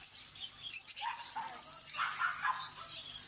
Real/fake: real